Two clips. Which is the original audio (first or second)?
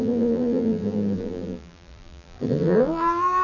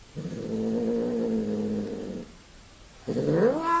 second